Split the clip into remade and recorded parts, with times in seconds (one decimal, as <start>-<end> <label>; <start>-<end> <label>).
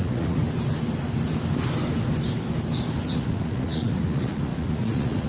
0.0-0.4 remade; 0.4-3.1 recorded; 3.1-5.3 remade